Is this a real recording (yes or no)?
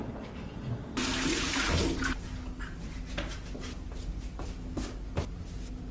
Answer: yes